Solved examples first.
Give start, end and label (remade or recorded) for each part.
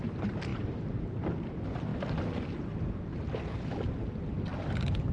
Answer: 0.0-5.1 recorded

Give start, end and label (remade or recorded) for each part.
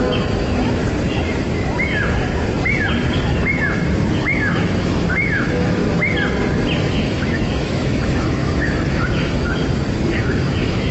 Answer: 0.0-0.8 remade; 0.8-4.1 recorded; 4.1-5.8 remade; 5.8-6.9 recorded; 6.9-9.6 remade; 9.6-10.2 recorded; 10.2-10.9 remade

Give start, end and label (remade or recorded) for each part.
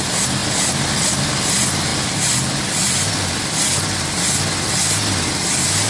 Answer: 0.0-5.9 recorded